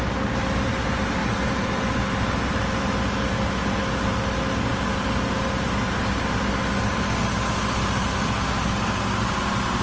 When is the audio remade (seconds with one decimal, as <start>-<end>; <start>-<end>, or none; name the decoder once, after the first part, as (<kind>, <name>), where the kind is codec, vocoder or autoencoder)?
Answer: none